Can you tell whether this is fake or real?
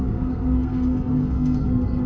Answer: fake